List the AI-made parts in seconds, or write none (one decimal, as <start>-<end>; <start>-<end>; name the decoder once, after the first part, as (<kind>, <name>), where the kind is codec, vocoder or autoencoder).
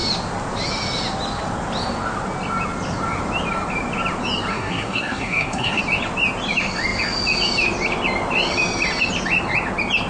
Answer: 4.5-5.8 (codec, SNAC)